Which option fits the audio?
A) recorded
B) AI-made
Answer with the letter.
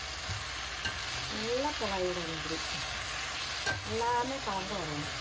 A